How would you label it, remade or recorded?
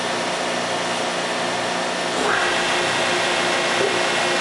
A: recorded